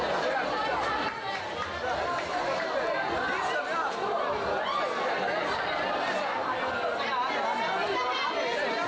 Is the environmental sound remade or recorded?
recorded